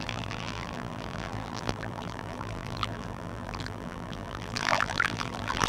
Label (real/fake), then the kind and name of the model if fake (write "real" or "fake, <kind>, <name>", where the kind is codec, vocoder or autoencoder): fake, vocoder, BigVGAN v2